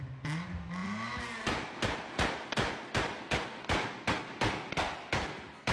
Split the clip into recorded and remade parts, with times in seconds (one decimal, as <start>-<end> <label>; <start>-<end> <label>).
0.0-5.7 recorded